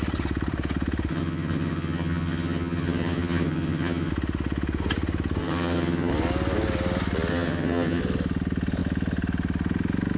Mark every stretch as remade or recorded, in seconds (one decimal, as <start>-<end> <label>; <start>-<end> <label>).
0.0-1.1 recorded; 1.1-4.1 remade; 4.1-5.4 recorded; 5.4-6.1 remade; 6.1-7.3 recorded; 7.3-8.0 remade; 8.0-10.2 recorded